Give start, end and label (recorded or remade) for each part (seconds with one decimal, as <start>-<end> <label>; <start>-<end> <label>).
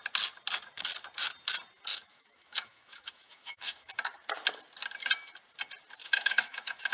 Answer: 0.0-1.9 recorded; 1.9-3.9 remade; 3.9-6.0 recorded; 6.0-6.9 remade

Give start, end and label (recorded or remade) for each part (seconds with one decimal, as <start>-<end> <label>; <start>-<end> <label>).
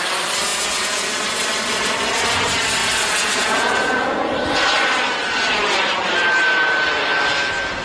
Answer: 0.0-0.5 recorded; 0.5-1.1 remade; 1.1-2.8 recorded; 2.8-4.3 remade; 4.3-7.8 recorded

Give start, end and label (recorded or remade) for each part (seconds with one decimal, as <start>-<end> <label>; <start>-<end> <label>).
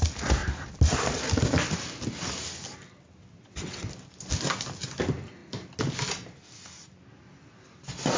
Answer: 0.0-3.2 recorded; 3.2-3.8 remade; 3.8-8.2 recorded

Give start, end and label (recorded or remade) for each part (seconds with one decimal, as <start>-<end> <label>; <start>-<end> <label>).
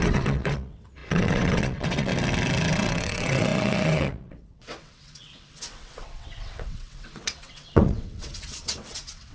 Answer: 0.0-2.1 remade; 2.1-2.7 recorded; 2.7-9.3 remade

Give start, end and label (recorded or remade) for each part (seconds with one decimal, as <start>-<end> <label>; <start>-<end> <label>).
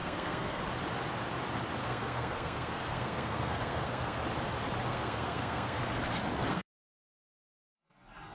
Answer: 0.0-0.6 remade; 0.6-1.8 recorded; 1.8-4.2 remade; 4.2-4.9 recorded; 4.9-5.8 remade; 5.8-6.5 recorded; 6.5-7.3 remade; 7.3-8.3 recorded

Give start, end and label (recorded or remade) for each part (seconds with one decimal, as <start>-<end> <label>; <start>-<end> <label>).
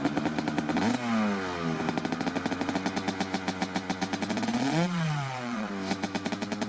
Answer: 0.0-4.5 recorded; 4.5-5.7 remade; 5.7-6.7 recorded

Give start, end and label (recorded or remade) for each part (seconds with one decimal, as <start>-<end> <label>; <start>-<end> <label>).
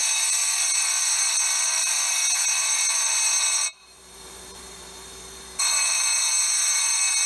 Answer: 0.0-7.3 remade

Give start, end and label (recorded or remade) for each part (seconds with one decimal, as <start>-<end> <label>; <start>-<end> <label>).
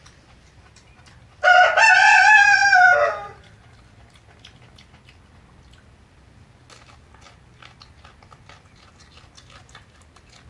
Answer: 0.0-10.5 recorded